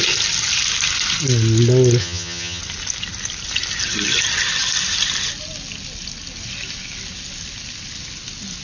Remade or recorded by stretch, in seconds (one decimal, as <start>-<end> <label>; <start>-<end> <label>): 0.0-2.0 recorded; 2.0-2.6 remade; 2.6-8.6 recorded